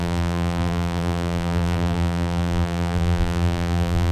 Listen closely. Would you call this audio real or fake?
fake